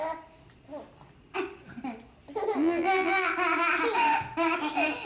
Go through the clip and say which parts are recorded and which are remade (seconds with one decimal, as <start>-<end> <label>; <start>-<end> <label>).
0.0-2.6 recorded; 2.6-3.3 remade; 3.3-5.1 recorded